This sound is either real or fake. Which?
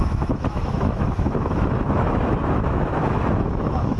fake